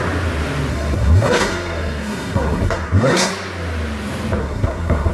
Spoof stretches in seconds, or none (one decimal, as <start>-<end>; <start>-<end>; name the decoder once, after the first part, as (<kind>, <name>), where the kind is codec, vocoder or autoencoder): 0.7-3.3 (codec, SNAC); 4.4-5.1